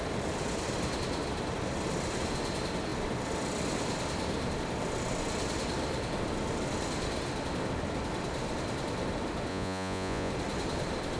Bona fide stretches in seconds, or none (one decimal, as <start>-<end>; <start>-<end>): 0.0-9.5; 10.3-11.2

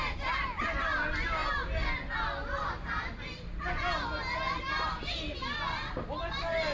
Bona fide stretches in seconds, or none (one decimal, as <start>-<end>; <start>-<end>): 0.0-6.7

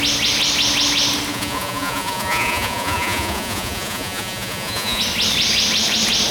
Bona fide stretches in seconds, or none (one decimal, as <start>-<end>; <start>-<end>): 0.0-1.3; 5.0-6.3